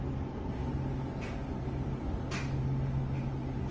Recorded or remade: recorded